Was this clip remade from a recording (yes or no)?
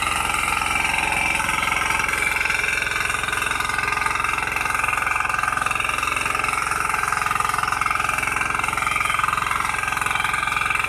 no